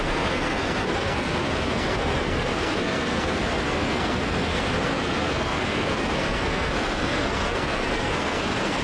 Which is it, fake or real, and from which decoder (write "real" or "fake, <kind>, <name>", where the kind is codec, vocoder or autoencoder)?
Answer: fake, codec, SNAC